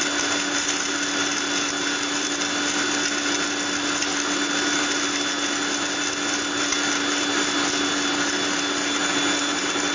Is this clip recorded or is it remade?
recorded